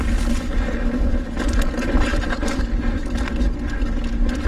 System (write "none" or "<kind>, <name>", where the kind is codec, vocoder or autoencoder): none